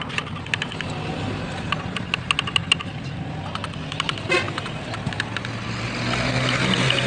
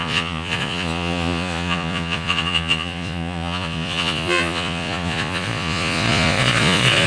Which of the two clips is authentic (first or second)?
first